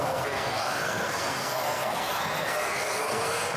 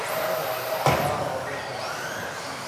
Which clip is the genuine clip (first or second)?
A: second